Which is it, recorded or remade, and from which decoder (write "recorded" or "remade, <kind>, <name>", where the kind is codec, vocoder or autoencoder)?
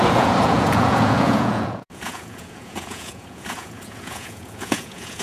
remade, vocoder, Vocos